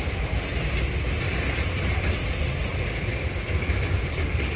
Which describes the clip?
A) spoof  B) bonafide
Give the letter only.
B